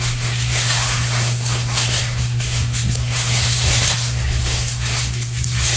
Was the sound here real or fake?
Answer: fake